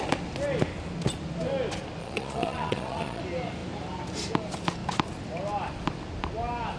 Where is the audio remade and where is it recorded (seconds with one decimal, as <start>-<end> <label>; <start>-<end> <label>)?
0.0-2.0 recorded; 2.0-3.2 remade; 3.2-6.8 recorded